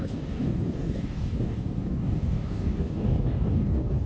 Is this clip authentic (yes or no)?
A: no